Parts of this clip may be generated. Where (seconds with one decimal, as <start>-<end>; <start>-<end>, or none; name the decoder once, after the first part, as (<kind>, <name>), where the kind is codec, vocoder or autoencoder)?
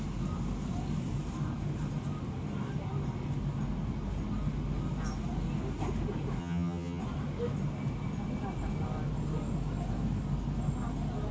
6.4-7.0 (vocoder, HiFi-GAN)